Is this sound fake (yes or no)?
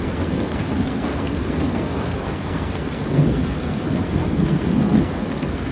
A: yes